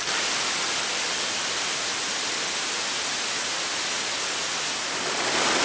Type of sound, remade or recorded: recorded